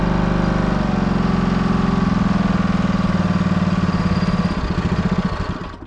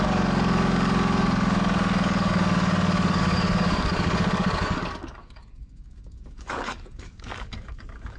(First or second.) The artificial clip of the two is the second